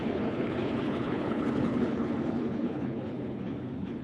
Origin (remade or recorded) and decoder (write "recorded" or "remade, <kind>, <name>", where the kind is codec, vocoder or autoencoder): remade, codec, HILCodec